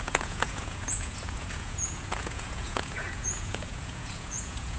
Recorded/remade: remade